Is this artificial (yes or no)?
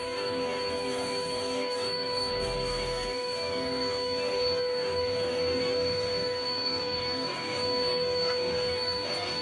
yes